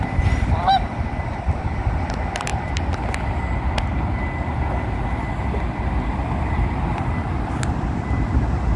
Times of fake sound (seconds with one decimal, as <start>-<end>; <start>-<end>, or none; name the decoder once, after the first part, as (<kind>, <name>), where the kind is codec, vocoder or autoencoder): none